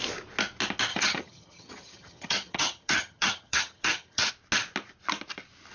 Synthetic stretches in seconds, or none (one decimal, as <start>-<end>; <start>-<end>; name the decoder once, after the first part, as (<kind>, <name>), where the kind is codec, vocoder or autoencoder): 0.9-4.3 (vocoder, HiFi-GAN)